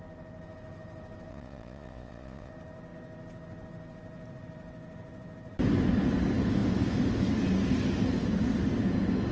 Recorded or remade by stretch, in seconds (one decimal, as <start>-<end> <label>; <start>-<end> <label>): 0.0-1.3 recorded; 1.3-2.5 remade; 2.5-9.3 recorded